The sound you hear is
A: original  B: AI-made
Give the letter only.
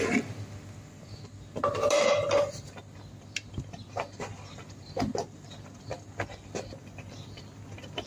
A